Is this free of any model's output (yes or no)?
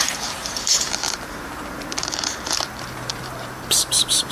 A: no